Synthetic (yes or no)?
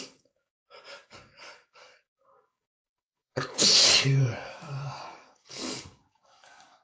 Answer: yes